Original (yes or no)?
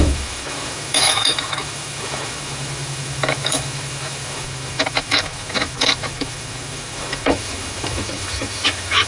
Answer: no